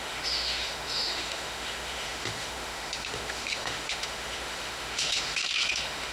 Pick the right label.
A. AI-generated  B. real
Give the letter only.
A